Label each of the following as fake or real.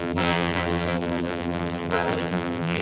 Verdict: fake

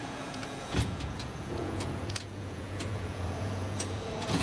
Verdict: fake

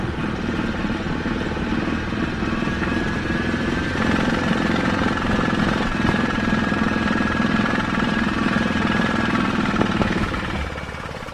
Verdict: fake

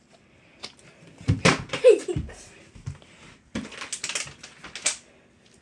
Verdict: real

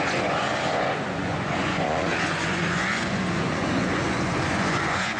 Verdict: fake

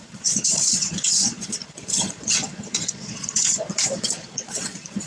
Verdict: fake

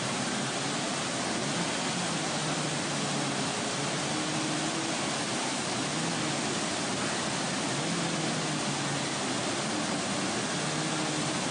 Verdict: real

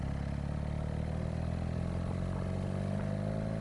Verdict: real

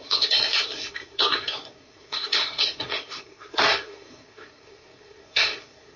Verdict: fake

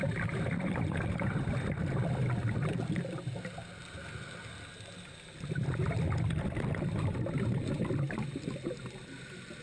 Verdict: real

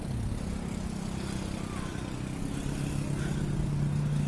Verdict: real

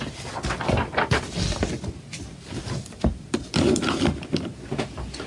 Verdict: real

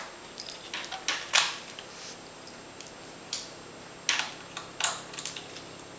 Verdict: real